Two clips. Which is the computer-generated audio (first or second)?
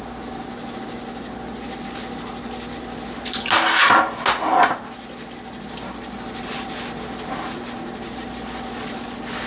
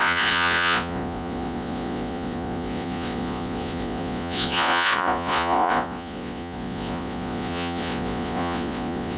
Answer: second